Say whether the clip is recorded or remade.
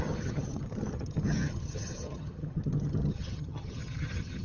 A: remade